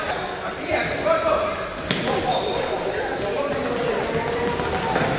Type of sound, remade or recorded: recorded